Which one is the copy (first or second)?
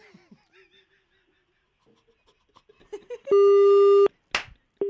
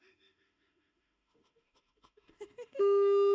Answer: second